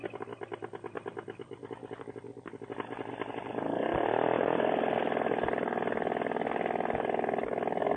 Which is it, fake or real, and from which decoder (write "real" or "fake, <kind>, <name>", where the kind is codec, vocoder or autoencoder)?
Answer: real